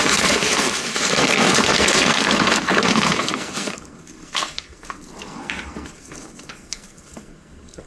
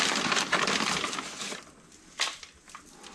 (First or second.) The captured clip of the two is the second